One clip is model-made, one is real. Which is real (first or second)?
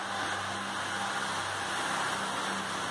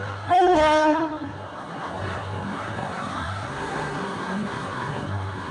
first